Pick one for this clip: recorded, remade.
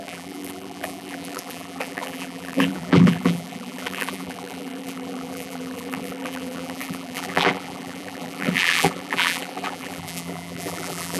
remade